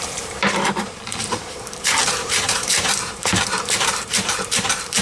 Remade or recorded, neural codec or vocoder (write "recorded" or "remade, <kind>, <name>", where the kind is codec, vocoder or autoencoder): remade, vocoder, BigVGAN v2